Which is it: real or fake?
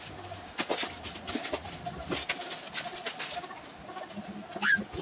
real